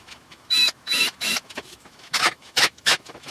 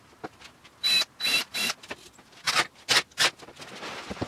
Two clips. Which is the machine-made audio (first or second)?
first